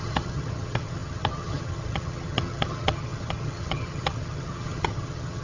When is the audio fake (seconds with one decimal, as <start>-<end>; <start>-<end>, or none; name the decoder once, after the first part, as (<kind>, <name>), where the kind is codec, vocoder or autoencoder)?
0.0-5.4 (vocoder, HiFi-GAN)